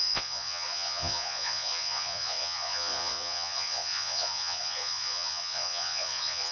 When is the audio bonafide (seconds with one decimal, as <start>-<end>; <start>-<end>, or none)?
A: none